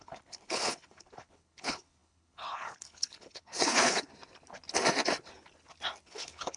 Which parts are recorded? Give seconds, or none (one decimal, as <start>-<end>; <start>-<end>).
4.1-6.0